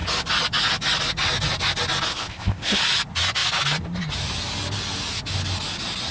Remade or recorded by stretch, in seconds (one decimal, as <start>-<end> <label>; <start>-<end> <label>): 0.0-2.1 recorded; 2.1-2.8 remade; 2.8-6.1 recorded